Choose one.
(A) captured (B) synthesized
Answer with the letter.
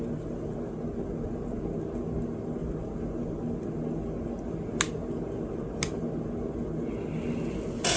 A